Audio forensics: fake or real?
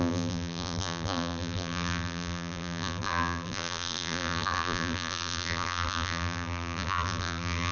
fake